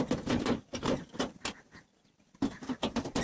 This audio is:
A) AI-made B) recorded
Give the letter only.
B